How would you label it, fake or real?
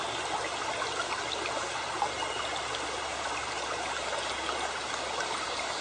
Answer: real